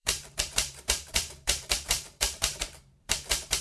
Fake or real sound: fake